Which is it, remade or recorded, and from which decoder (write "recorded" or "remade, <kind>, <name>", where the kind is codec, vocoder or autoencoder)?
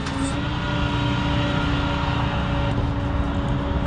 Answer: recorded